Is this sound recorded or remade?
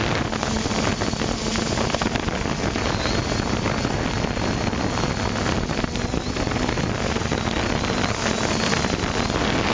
recorded